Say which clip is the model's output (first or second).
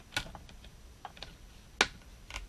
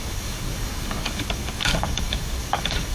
second